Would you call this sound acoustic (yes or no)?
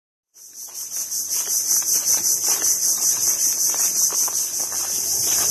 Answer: yes